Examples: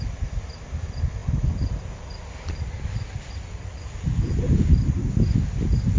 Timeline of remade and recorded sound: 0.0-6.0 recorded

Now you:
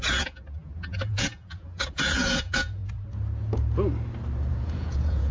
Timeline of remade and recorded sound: 0.0-2.8 remade; 2.8-4.5 recorded; 4.5-5.3 remade